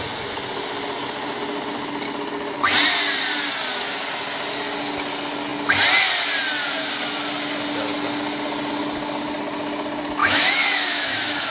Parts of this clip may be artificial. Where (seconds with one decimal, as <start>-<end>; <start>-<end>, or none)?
10.2-11.5